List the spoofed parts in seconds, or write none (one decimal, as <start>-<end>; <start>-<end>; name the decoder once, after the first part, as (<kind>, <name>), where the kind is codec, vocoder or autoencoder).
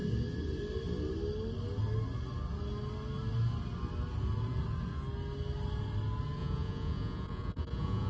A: 6.4-8.1 (vocoder, Vocos)